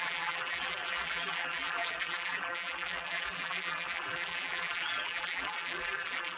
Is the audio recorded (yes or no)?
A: no